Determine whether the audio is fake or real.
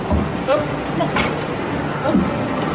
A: real